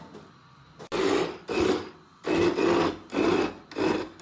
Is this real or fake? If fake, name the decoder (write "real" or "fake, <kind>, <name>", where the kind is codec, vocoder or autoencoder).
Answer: real